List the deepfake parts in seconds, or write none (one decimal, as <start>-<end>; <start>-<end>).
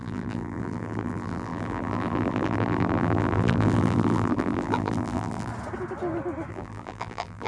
0.0-5.5; 6.5-7.5